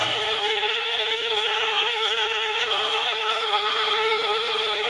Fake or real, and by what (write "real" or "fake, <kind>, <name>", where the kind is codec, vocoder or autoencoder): fake, codec, SNAC